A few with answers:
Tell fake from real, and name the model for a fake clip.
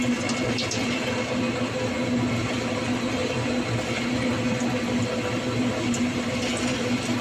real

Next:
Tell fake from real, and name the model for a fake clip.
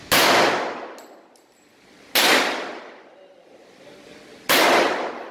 real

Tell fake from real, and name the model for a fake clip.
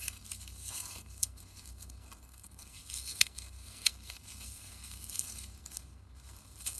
fake, codec, SNAC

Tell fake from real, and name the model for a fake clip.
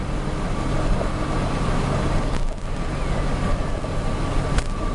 real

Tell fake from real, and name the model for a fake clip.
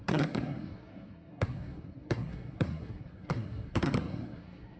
fake, codec, SNAC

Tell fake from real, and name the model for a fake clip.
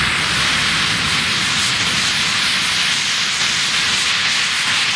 real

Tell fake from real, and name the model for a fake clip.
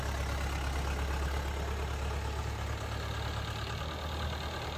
real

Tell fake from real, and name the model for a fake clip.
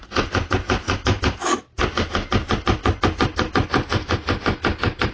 real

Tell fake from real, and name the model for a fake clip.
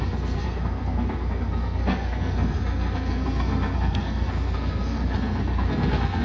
fake, codec, SNAC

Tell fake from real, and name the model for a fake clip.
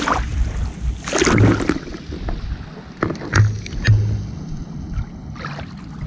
real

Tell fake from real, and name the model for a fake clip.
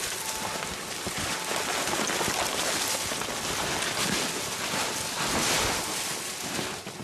real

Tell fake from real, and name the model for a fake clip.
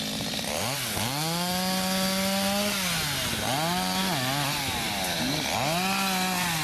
real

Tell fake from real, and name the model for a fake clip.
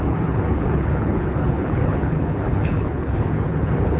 fake, codec, HILCodec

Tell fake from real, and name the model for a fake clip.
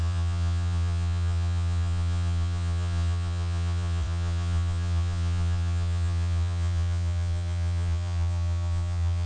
fake, vocoder, Vocos